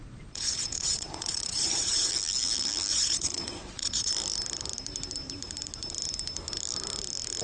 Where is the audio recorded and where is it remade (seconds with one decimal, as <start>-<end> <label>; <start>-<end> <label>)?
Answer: 0.0-2.1 remade; 2.1-2.9 recorded; 2.9-4.1 remade; 4.1-7.4 recorded